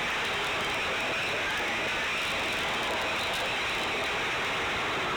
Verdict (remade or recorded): recorded